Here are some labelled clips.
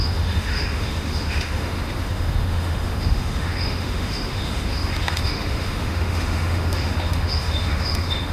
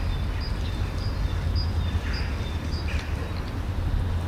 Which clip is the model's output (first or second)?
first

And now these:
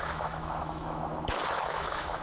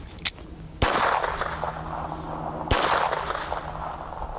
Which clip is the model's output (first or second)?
first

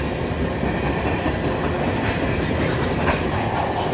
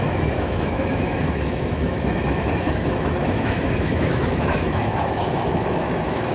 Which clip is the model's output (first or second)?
second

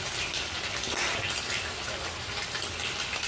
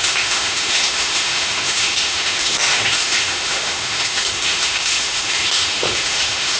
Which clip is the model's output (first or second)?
second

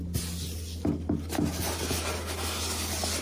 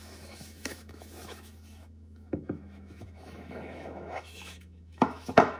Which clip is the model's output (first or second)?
second